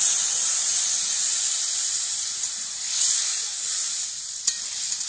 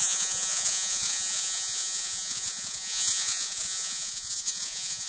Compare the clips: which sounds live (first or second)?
first